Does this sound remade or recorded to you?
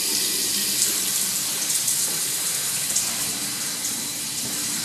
recorded